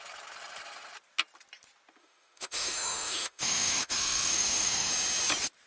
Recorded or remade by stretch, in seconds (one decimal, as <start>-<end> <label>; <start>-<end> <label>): 0.0-2.0 recorded; 2.0-4.9 remade; 4.9-5.7 recorded